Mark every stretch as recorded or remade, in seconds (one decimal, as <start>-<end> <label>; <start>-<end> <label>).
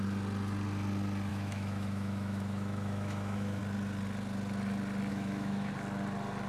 0.0-1.3 recorded; 1.3-3.6 remade; 3.6-5.1 recorded; 5.1-5.7 remade; 5.7-6.5 recorded